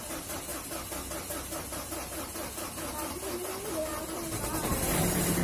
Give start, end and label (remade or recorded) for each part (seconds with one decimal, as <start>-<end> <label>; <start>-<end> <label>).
0.0-5.4 recorded